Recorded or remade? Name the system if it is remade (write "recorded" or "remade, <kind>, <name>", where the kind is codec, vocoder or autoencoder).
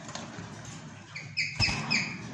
recorded